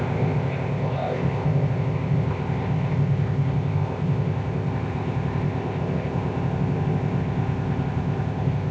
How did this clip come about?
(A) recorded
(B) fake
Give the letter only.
B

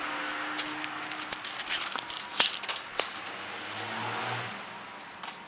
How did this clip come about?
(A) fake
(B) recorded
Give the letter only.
B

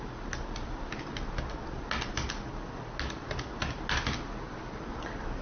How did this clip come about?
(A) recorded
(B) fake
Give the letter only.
A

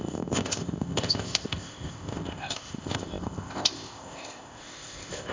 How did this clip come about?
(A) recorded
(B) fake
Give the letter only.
B